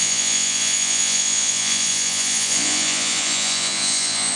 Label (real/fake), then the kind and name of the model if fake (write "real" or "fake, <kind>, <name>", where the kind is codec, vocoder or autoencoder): fake, vocoder, Vocos